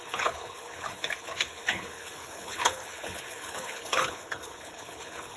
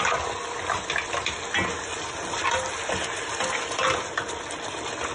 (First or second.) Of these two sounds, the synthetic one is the first